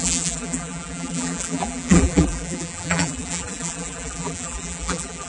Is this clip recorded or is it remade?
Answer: remade